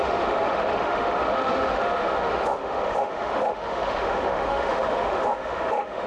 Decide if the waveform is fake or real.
fake